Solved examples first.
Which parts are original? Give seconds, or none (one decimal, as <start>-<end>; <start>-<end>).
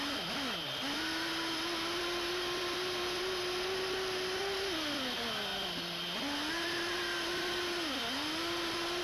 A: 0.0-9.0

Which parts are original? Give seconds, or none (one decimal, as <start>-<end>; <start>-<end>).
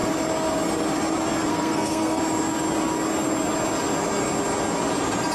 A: 0.0-1.5; 2.2-5.3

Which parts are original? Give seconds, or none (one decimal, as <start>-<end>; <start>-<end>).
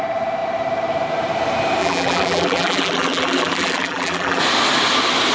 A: 0.0-1.8; 4.4-5.3